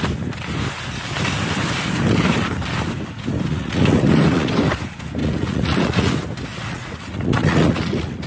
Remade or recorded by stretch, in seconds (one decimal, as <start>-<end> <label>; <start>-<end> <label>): 0.0-3.5 recorded; 3.5-4.5 remade; 4.5-5.2 recorded; 5.2-6.1 remade; 6.1-6.5 recorded; 6.5-8.3 remade